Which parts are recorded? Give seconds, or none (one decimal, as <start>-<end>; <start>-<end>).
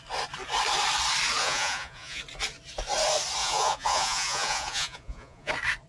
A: 0.0-1.4; 2.2-3.4; 5.5-5.9